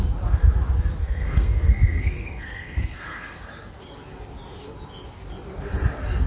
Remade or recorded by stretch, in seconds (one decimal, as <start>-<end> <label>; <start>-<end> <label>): 0.0-1.0 recorded; 1.0-3.5 remade; 3.5-6.3 recorded